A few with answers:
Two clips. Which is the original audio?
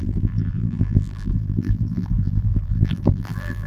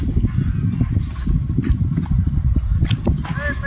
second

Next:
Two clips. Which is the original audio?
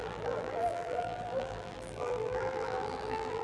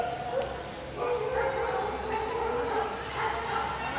second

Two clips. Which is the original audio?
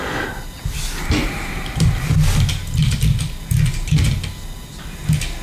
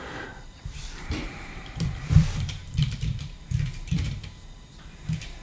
first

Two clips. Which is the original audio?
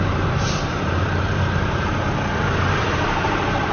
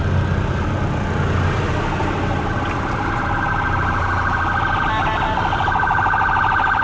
second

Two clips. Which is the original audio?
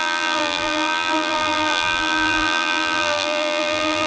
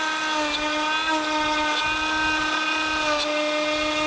second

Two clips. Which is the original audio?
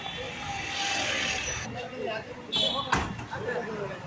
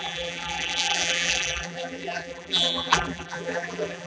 first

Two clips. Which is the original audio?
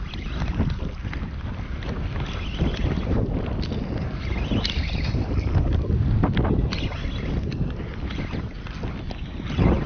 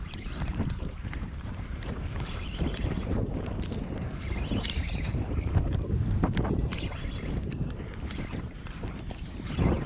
first